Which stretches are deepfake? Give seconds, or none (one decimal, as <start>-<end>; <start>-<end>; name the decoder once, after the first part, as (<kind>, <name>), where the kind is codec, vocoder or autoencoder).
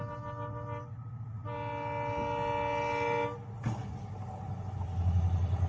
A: none